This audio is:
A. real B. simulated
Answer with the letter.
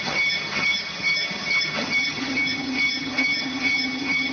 B